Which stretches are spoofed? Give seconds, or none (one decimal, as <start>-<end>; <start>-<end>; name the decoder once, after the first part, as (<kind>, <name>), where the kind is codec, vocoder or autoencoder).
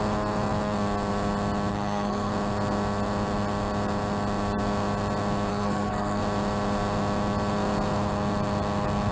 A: 1.7-2.3 (codec, SNAC); 5.5-6.2